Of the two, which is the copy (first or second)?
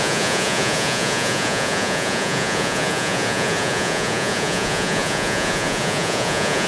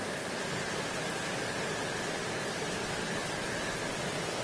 first